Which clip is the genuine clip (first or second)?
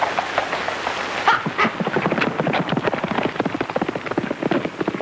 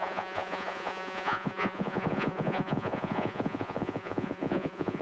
first